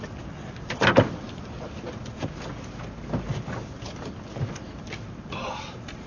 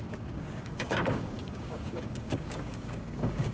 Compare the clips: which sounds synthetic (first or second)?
second